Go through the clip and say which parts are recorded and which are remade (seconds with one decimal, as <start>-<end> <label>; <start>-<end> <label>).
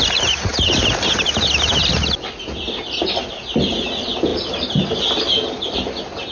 0.0-6.3 recorded